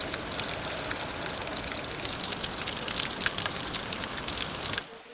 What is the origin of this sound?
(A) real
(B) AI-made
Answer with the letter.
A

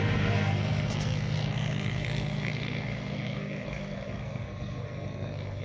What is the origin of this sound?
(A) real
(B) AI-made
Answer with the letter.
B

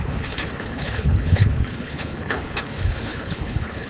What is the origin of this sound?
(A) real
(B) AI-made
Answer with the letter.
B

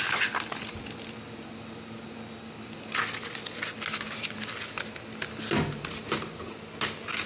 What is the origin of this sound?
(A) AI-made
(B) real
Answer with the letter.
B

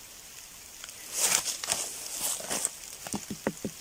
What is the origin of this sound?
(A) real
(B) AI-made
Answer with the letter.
A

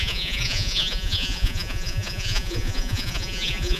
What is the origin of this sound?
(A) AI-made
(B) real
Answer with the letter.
A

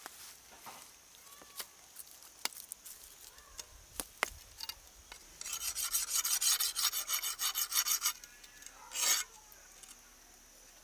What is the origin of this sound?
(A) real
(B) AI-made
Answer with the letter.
A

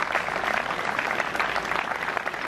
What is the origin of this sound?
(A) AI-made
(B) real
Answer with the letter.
B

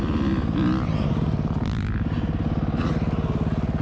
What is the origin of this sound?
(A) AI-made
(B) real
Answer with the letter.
B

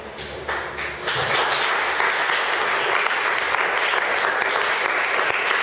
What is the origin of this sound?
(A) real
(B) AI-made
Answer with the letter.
A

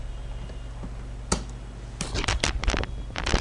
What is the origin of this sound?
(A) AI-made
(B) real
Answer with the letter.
B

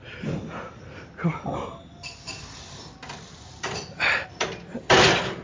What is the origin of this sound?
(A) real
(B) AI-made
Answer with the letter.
A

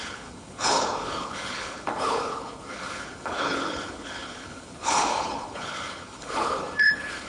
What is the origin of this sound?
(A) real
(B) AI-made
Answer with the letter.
B